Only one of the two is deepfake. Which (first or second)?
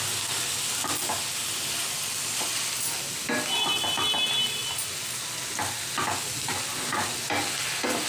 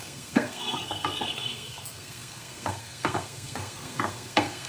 second